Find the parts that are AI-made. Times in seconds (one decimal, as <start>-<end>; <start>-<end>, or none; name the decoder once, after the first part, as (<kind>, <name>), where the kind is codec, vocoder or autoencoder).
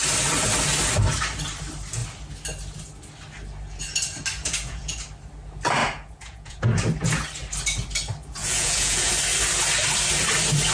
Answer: 4.4-5.0 (vocoder, Vocos); 5.8-6.6; 8.4-9.1